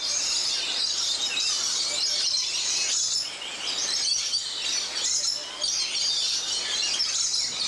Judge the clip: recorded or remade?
recorded